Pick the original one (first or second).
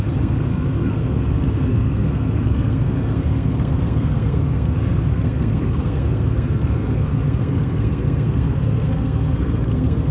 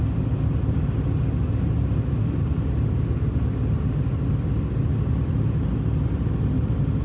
second